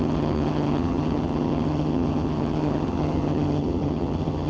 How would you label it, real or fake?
fake